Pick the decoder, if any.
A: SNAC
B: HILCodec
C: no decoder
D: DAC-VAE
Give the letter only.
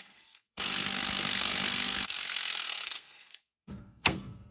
A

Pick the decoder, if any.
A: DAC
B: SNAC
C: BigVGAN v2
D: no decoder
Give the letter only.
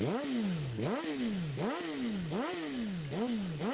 D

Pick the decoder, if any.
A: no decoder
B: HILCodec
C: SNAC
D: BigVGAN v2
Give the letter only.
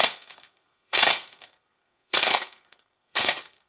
C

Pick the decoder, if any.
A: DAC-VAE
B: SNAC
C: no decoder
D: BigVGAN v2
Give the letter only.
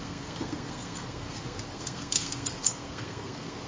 B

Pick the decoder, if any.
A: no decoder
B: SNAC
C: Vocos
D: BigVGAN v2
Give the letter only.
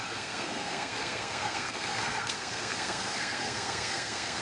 B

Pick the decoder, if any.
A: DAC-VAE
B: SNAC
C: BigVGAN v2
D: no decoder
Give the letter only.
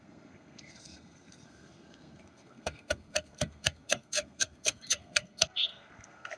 B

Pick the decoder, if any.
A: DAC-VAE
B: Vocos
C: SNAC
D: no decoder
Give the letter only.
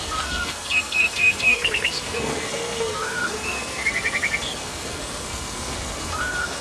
C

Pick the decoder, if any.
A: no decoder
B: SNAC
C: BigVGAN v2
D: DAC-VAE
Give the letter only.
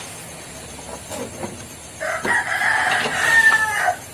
A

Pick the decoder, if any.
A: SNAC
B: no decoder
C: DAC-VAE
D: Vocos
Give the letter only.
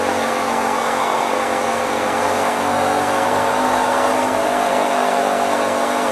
A